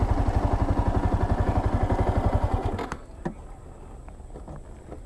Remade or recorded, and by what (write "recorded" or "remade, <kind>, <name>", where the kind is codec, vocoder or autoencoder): recorded